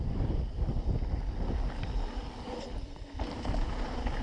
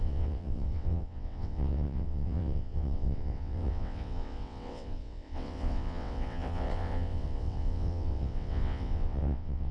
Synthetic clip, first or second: second